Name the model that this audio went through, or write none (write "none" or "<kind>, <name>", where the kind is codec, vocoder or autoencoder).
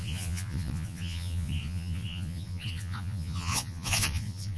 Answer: vocoder, Vocos